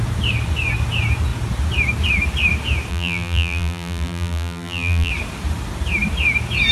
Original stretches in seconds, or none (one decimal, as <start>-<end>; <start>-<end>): 0.0-2.9; 5.1-6.7